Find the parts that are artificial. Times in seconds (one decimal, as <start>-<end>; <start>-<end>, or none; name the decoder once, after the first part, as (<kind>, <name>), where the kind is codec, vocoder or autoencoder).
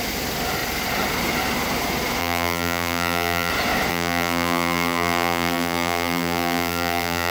2.2-3.5 (vocoder, BigVGAN v2); 3.9-7.3